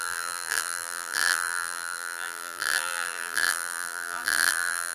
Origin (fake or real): fake